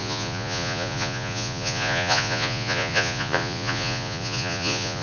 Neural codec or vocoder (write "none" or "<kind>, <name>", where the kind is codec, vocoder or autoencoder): vocoder, Vocos